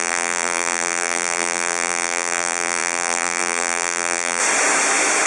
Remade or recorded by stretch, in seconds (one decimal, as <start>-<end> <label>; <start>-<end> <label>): 0.0-4.4 remade; 4.4-5.3 recorded